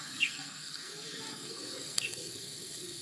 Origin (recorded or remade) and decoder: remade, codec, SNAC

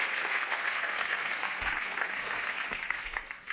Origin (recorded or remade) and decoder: remade, codec, SNAC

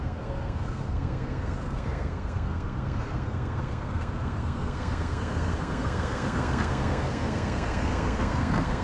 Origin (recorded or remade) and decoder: remade, codec, SNAC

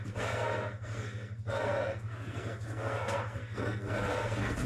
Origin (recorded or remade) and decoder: remade, codec, SNAC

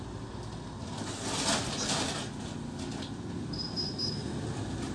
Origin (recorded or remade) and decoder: recorded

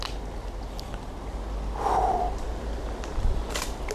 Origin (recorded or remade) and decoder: recorded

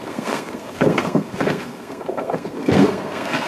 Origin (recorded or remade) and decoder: remade, codec, SNAC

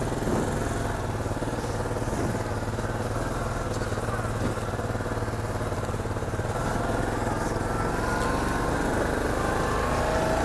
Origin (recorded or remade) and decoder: recorded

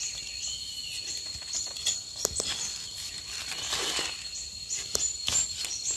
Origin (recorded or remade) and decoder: recorded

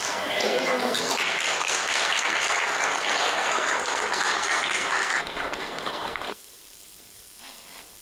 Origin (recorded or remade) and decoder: remade, codec, SNAC